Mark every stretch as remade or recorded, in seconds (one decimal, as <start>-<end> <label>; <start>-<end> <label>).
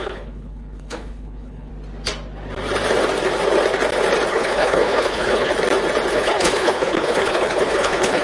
0.0-1.7 remade; 1.7-4.3 recorded; 4.3-5.5 remade; 5.5-6.1 recorded; 6.1-8.2 remade